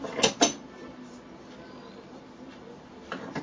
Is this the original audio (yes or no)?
yes